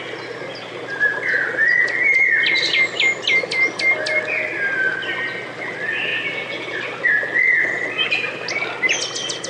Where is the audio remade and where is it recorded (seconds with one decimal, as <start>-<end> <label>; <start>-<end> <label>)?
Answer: 0.0-6.1 recorded; 6.1-8.5 remade; 8.5-9.5 recorded